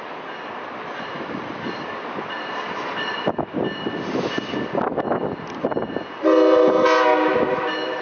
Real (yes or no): yes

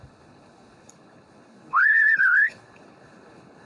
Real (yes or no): no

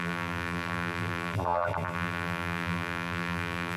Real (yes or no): no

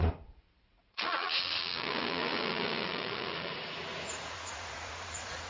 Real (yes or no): no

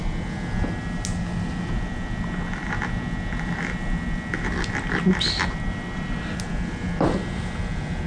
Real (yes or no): yes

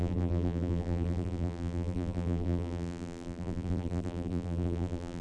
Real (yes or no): no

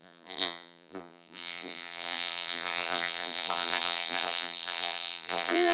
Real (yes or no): no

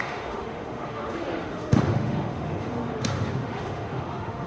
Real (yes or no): no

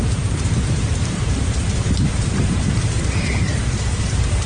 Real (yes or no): no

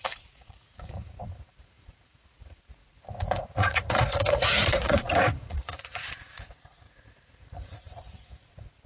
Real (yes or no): no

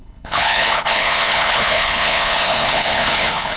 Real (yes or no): no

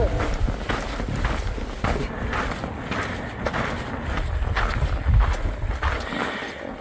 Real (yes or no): yes